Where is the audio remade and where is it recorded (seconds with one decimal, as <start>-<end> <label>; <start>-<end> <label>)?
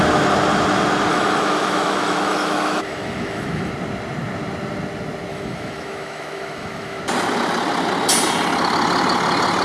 0.0-1.1 recorded; 1.1-3.7 remade; 3.7-5.3 recorded; 5.3-7.0 remade; 7.0-9.6 recorded